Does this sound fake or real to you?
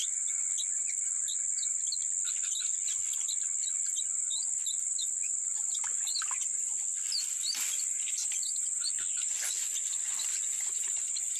real